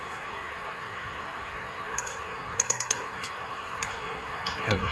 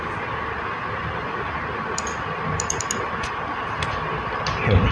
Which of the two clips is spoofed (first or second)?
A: first